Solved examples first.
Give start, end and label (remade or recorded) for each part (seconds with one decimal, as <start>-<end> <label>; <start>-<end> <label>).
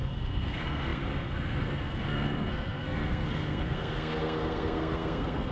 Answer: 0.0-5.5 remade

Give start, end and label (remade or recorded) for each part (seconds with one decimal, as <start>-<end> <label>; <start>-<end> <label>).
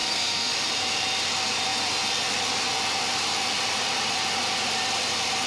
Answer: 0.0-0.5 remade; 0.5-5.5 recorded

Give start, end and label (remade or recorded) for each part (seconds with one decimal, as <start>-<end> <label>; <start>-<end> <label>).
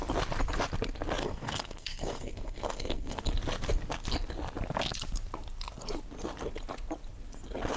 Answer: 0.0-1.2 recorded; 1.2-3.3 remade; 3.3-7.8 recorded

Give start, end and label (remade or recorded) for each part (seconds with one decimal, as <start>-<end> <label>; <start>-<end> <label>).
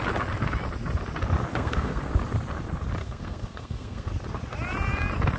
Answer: 0.0-1.5 recorded; 1.5-2.1 remade; 2.1-3.0 recorded; 3.0-4.1 remade; 4.1-5.4 recorded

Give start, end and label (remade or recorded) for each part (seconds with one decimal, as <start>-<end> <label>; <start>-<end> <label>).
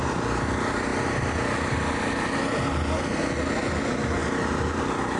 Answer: 0.0-5.2 recorded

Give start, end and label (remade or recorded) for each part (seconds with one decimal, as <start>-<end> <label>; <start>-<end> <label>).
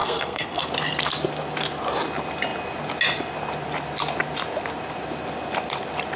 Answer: 0.0-0.7 remade; 0.7-6.2 recorded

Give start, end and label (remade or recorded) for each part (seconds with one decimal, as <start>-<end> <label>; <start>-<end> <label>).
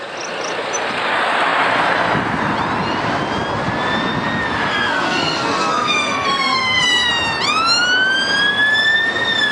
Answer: 0.0-4.7 recorded; 4.7-7.1 remade; 7.1-9.5 recorded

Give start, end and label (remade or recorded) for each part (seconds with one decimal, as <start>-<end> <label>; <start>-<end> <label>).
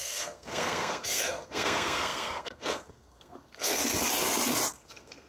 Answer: 0.0-3.8 remade; 3.8-4.7 recorded; 4.7-5.3 remade